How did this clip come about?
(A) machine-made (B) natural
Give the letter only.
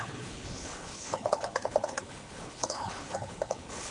A